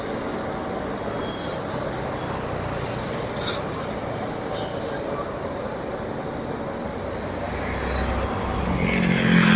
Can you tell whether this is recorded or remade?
recorded